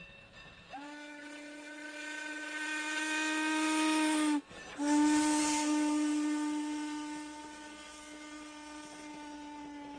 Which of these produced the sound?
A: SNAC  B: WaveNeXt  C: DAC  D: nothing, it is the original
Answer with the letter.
D